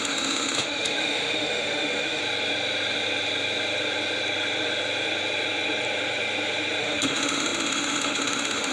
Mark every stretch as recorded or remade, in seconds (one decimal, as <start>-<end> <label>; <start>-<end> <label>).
0.0-2.2 remade; 2.2-6.8 recorded; 6.8-8.7 remade